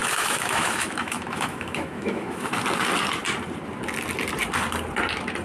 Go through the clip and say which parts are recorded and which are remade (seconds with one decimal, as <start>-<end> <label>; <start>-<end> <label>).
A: 0.0-2.5 remade; 2.5-5.4 recorded